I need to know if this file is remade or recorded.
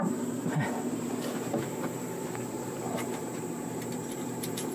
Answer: remade